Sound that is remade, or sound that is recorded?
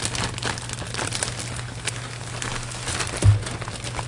recorded